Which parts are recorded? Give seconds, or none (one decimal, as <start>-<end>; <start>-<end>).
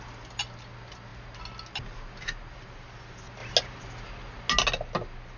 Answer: 0.0-5.4